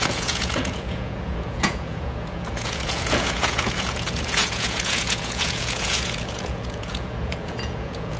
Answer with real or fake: fake